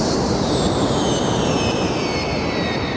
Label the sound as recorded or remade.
recorded